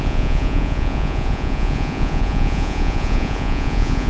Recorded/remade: remade